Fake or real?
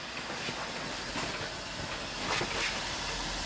real